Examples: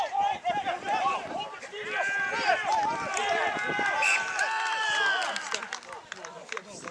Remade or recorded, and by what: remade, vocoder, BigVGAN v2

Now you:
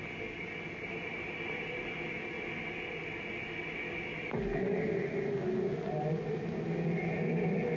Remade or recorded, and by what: recorded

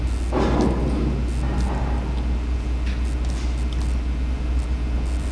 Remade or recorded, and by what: recorded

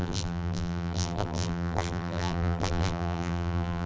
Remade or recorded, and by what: remade, vocoder, BigVGAN v2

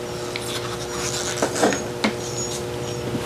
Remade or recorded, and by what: recorded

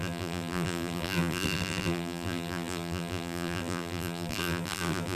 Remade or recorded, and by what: remade, vocoder, BigVGAN v2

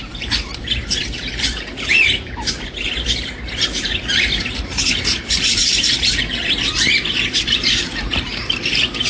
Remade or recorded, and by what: remade, vocoder, BigVGAN v2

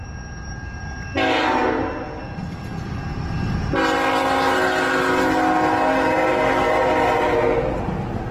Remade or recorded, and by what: recorded